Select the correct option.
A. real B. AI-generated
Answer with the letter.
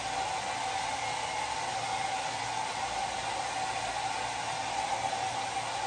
A